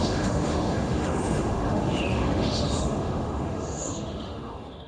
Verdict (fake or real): fake